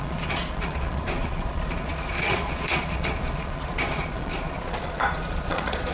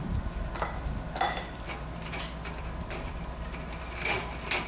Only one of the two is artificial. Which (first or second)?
first